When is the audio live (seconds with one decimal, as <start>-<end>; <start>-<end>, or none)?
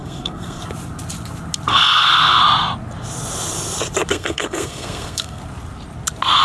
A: 0.6-1.7; 2.4-4.1; 5.4-6.4